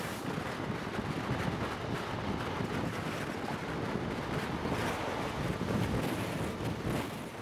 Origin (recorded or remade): recorded